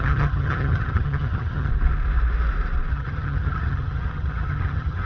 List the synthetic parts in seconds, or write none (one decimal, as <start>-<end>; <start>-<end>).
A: 0.0-1.7; 2.9-5.1